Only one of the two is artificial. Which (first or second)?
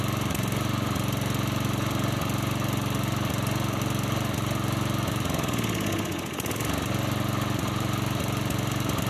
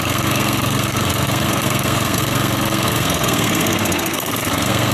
second